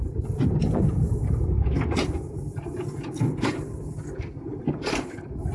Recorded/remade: recorded